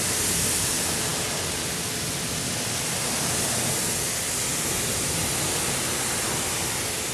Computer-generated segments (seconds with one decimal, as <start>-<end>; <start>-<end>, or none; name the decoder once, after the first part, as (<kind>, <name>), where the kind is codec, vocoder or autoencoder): none